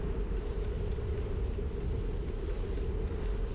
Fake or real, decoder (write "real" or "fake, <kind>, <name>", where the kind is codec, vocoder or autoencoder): real